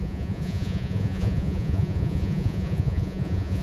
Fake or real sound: fake